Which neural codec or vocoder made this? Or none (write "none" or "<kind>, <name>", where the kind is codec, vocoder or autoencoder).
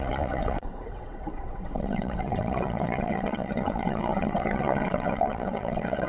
vocoder, WaveNeXt